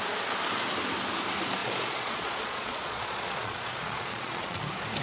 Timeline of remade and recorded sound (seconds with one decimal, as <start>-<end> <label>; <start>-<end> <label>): 0.0-1.6 recorded; 1.6-4.6 remade; 4.6-5.0 recorded